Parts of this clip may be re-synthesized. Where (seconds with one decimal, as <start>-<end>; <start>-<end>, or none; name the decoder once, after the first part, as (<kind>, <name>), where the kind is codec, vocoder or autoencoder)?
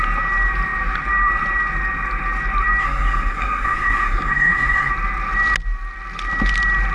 2.8-4.9 (codec, SNAC)